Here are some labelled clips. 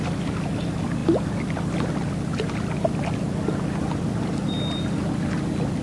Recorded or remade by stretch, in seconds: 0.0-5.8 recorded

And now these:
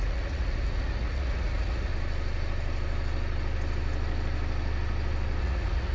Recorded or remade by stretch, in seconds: 0.0-1.9 remade; 1.9-5.4 recorded; 5.4-5.9 remade

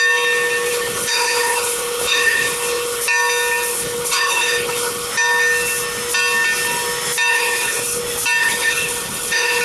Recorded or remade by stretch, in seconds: 0.0-0.7 recorded; 0.7-3.0 remade; 3.0-3.7 recorded; 3.7-5.1 remade; 5.1-7.3 recorded; 7.3-8.0 remade; 8.0-8.4 recorded; 8.4-9.6 remade

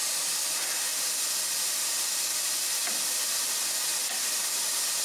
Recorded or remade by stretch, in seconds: 0.0-5.0 recorded

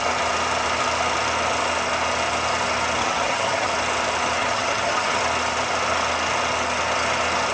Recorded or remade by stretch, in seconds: 0.0-3.0 recorded; 3.0-3.7 remade; 3.7-4.4 recorded; 4.4-5.2 remade; 5.2-7.5 recorded

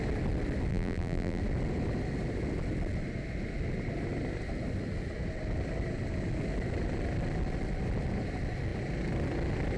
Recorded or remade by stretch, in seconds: 0.0-0.7 recorded; 0.7-1.4 remade; 1.4-9.8 recorded